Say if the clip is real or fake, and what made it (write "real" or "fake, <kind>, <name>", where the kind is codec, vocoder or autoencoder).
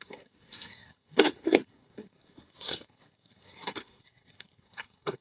fake, codec, SNAC